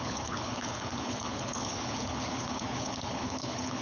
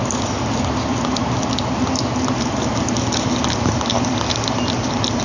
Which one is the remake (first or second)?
first